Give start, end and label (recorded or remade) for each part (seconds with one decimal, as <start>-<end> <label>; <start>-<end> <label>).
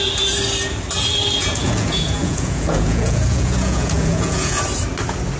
0.0-1.4 recorded; 1.4-4.6 remade; 4.6-5.4 recorded